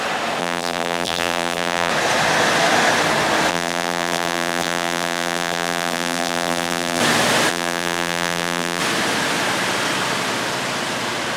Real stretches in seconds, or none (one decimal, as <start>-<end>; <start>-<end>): 0.0-0.4; 1.9-3.5; 7.0-7.5; 8.8-11.4